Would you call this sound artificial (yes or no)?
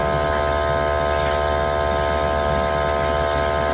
no